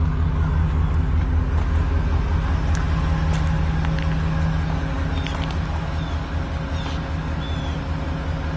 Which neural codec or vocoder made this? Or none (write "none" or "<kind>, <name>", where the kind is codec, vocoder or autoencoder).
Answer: none